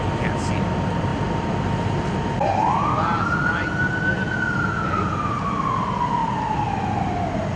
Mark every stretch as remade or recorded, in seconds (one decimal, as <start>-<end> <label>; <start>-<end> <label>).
0.0-7.6 recorded